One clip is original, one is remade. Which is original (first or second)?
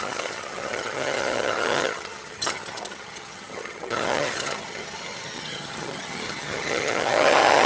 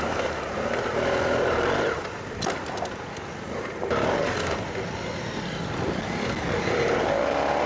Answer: second